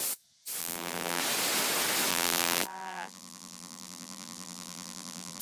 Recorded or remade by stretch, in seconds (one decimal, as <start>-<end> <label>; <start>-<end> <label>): 0.0-0.6 recorded; 0.6-1.2 remade; 1.2-2.1 recorded; 2.1-5.4 remade